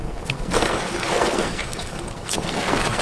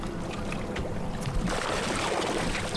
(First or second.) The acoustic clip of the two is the second